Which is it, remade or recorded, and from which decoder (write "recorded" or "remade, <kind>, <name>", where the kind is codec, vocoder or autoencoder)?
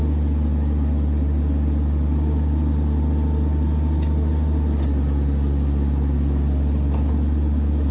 recorded